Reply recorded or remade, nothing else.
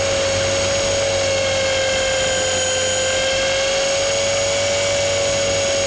recorded